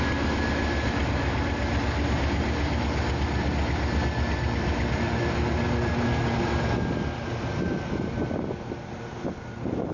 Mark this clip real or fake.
real